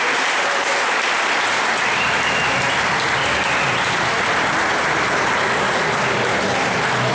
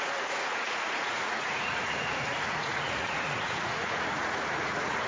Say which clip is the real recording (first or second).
first